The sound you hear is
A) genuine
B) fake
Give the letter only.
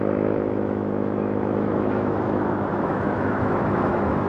B